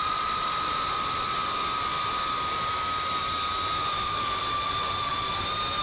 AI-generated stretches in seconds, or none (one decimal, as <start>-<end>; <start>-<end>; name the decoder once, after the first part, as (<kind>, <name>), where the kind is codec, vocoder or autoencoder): 0.0-5.1 (vocoder, BigVGAN v2)

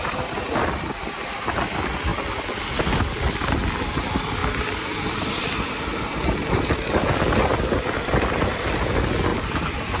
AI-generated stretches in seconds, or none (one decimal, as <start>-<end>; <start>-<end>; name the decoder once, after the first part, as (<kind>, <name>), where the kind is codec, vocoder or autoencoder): 4.4-8.8 (vocoder, BigVGAN v2); 9.3-10.0

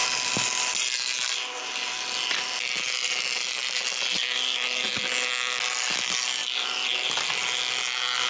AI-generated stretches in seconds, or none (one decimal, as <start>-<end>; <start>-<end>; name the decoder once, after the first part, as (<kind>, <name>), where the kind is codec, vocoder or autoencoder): 0.0-5.0 (vocoder, BigVGAN v2); 6.4-7.3